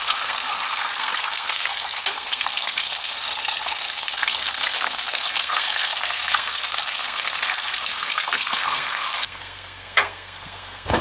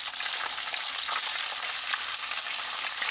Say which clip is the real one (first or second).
second